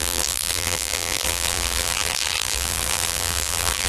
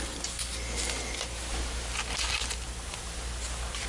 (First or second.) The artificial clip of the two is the first